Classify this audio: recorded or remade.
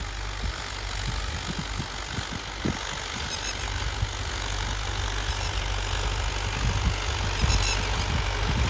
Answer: recorded